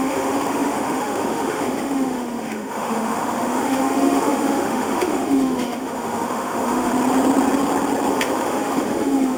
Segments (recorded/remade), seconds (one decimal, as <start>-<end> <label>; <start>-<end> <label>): 0.0-6.9 remade; 6.9-8.1 recorded; 8.1-9.4 remade